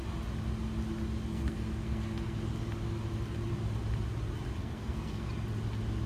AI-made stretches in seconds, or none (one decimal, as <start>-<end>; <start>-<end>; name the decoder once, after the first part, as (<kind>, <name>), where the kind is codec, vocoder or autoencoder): 1.3-2.4 (codec, SNAC); 4.6-5.3